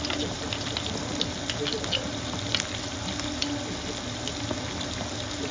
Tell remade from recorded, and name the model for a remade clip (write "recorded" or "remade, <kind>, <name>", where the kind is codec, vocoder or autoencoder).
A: recorded